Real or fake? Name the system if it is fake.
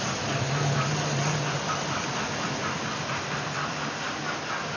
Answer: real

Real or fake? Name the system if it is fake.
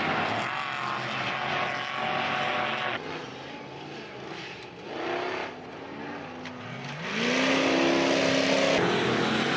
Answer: real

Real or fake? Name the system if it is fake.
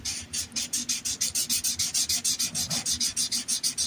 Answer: real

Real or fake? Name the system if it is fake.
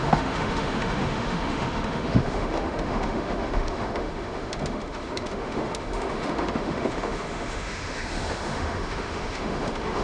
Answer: fake, autoencoder, DAC-VAE